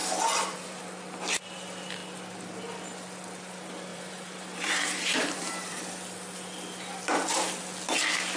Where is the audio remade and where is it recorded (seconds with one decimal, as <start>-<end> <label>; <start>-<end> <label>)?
0.0-0.8 remade; 0.8-3.9 recorded; 3.9-5.8 remade; 5.8-8.4 recorded